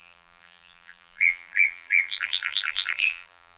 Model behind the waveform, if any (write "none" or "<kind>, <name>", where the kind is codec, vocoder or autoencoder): vocoder, BigVGAN v2